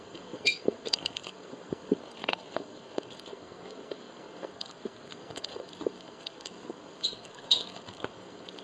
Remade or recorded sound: remade